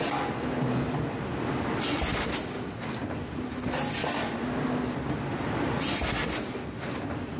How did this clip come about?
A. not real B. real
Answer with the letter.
B